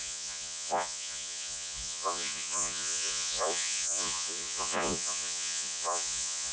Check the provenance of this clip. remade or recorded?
remade